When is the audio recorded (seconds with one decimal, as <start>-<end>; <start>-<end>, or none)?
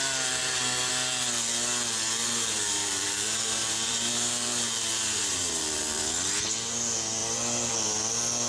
0.0-2.2; 6.0-8.5